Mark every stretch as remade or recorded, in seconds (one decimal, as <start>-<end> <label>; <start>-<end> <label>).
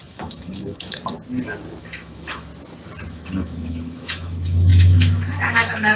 0.0-1.0 remade; 1.0-1.8 recorded; 1.8-2.5 remade; 2.5-3.1 recorded; 3.1-6.0 remade